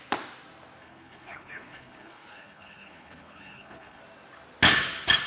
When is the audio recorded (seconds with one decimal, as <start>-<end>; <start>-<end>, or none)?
0.0-0.8; 4.0-5.3